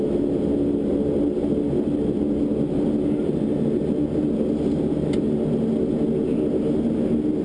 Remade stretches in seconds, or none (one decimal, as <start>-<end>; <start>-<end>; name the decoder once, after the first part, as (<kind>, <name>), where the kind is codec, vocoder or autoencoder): none